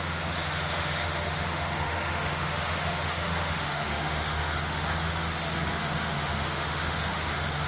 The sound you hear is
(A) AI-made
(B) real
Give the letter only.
A